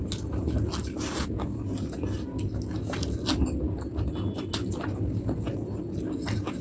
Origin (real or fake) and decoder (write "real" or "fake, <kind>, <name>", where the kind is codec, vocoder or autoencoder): real